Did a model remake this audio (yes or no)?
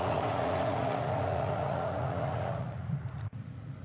yes